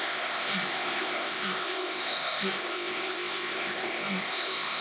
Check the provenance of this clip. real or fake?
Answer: fake